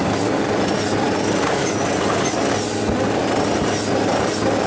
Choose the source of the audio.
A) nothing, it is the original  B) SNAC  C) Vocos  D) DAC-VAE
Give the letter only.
A